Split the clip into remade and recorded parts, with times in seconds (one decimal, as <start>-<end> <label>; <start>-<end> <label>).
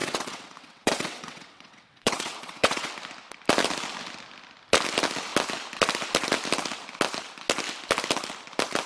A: 0.0-2.9 remade; 2.9-8.9 recorded